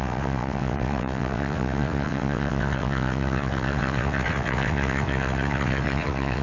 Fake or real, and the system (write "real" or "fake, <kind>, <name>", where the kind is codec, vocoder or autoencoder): fake, vocoder, WaveNeXt